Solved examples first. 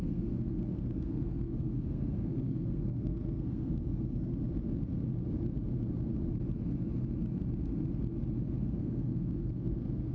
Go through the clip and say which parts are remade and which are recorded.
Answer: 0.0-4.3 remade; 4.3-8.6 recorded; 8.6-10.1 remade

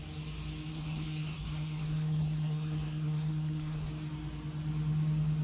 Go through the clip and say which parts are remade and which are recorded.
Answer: 0.0-0.7 recorded; 0.7-3.9 remade; 3.9-5.4 recorded

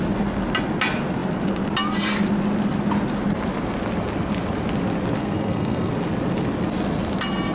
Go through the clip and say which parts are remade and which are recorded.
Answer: 0.0-5.2 recorded; 5.2-5.9 remade; 5.9-7.5 recorded

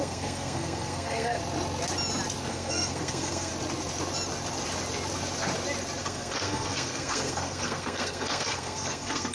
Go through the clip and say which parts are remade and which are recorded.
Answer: 0.0-1.4 remade; 1.4-2.5 recorded; 2.5-3.5 remade; 3.5-6.0 recorded; 6.0-9.3 remade

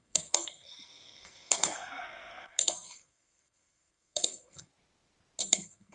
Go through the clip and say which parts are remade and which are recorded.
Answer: 0.0-4.7 remade; 4.7-5.4 recorded; 5.4-5.9 remade

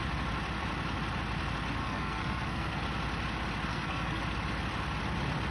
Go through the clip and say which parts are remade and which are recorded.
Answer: 0.0-1.8 recorded; 1.8-2.8 remade; 2.8-3.7 recorded; 3.7-4.2 remade; 4.2-5.5 recorded